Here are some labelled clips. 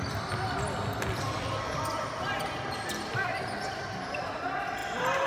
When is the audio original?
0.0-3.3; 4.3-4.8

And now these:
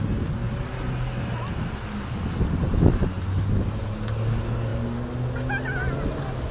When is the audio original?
0.0-6.5

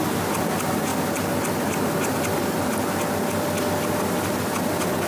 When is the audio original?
0.0-5.1

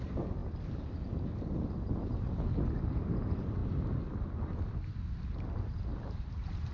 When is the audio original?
0.0-5.9

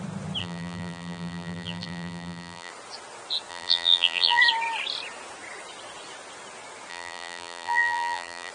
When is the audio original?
0.0-0.4; 2.7-3.5; 4.4-6.9

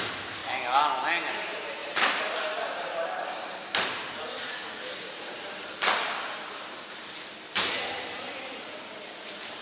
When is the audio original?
0.4-1.3

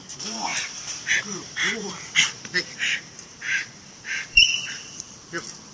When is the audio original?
0.5-1.2

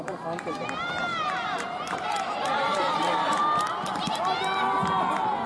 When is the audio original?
0.0-1.1; 3.4-5.5